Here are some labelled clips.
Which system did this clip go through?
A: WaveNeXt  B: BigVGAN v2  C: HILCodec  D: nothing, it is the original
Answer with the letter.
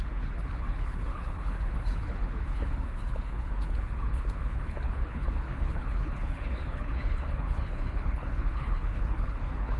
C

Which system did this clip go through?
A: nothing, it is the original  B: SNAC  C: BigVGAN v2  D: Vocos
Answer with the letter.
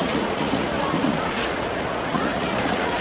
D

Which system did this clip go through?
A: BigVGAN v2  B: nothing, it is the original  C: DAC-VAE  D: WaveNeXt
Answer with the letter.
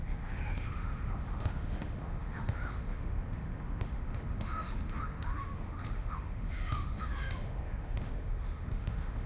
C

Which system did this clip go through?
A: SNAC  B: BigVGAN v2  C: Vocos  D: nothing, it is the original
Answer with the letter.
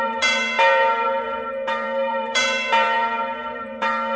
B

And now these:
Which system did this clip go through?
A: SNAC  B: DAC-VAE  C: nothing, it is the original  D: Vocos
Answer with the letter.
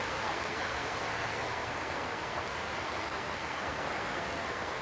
A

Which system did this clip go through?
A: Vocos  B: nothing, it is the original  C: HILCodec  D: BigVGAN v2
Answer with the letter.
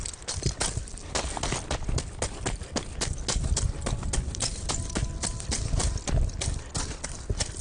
B